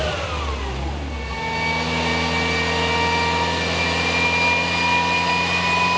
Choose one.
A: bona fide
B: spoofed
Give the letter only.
A